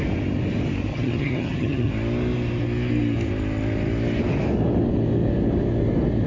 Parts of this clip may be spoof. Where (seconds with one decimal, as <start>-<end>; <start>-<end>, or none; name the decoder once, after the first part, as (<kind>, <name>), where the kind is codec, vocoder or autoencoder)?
0.9-1.9 (vocoder, HiFi-GAN)